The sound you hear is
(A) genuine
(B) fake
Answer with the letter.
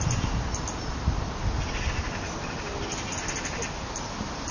A